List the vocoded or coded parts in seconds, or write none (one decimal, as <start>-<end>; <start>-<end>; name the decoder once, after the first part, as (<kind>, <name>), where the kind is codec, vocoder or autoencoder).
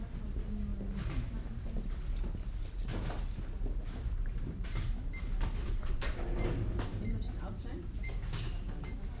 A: 7.7-9.2 (codec, DAC)